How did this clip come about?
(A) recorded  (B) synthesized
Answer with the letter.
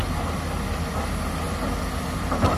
A